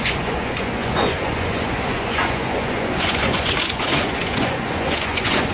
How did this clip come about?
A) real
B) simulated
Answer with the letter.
B